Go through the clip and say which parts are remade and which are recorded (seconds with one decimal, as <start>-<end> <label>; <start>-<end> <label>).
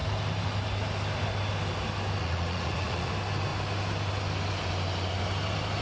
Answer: 0.0-2.2 recorded; 2.2-3.1 remade; 3.1-5.8 recorded